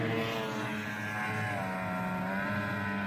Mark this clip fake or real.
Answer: real